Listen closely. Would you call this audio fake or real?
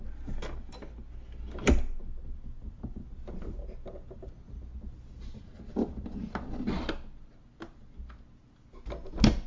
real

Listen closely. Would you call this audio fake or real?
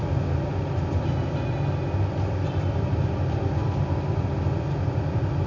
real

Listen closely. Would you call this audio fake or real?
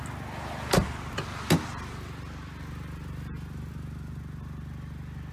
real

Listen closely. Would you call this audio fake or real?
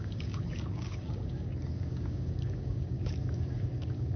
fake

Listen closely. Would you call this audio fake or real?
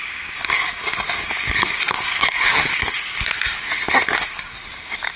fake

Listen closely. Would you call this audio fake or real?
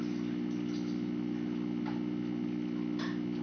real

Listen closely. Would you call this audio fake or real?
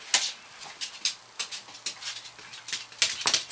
real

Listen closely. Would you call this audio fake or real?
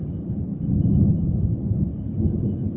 real